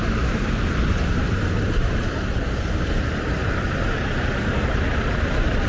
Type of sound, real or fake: fake